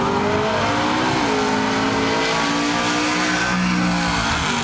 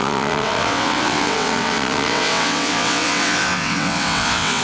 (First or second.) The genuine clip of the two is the first